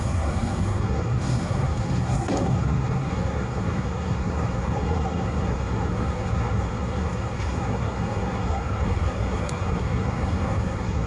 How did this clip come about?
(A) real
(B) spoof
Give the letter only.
B